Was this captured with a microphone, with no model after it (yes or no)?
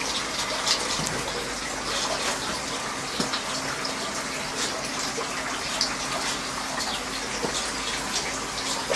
yes